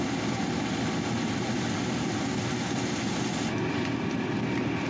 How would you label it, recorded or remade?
remade